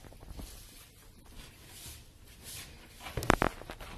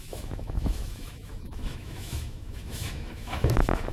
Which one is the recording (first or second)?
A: first